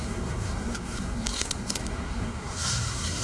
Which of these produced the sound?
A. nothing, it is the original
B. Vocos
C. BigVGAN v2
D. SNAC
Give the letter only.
D